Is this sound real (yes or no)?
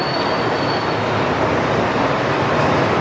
yes